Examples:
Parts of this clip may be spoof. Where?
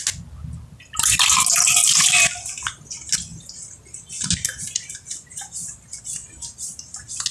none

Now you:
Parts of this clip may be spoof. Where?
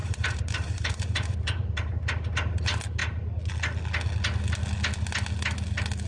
0.0-1.9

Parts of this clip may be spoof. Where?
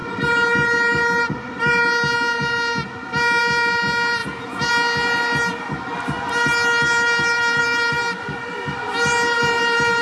4.2-4.7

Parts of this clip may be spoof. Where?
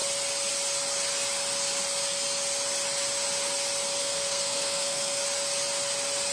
4.0-5.2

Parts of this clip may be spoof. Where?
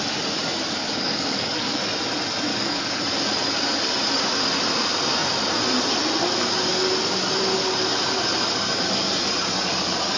0.8-1.8; 2.5-3.0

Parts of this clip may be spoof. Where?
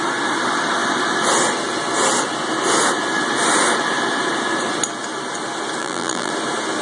5.8-6.3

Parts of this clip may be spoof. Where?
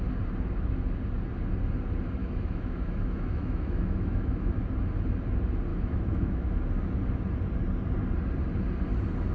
2.2-4.5; 5.7-6.5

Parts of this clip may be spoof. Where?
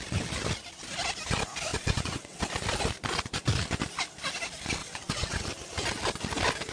1.7-2.4; 4.8-5.4